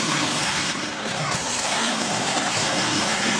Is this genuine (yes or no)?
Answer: no